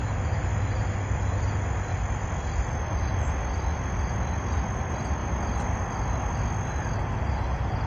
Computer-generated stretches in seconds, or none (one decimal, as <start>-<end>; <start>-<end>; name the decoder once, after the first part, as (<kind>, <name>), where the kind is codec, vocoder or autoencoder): 0.0-0.8 (vocoder, BigVGAN v2)